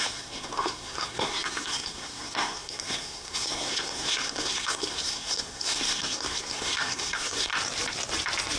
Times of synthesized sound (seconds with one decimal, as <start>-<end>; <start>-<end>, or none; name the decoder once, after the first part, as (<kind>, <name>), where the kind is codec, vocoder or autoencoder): 0.0-7.5 (codec, SNAC)